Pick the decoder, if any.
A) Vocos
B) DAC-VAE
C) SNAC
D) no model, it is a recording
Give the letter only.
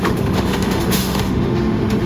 B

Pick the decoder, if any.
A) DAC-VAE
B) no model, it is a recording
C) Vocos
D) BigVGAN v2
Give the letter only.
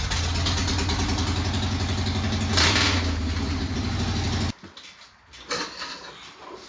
B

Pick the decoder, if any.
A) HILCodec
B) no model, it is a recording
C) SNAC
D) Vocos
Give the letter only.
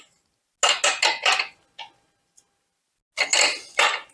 B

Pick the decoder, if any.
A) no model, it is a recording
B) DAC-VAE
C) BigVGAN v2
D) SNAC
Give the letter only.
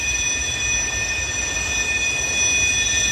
A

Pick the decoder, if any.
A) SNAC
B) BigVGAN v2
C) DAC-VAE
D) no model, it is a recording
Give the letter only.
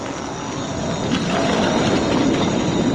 D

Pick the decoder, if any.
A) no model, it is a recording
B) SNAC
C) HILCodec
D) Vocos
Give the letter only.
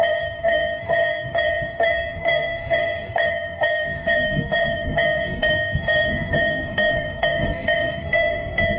B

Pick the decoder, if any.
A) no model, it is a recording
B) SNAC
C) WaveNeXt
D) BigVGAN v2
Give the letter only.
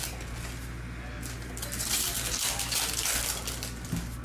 A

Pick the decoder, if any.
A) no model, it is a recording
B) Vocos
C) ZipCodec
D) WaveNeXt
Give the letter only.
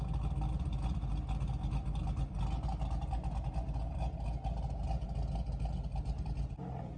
A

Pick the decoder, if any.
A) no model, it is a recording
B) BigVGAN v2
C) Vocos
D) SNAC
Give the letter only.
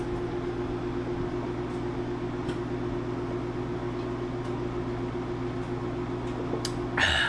A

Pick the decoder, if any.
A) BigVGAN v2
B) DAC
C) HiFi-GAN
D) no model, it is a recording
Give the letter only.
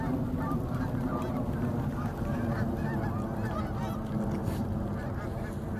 D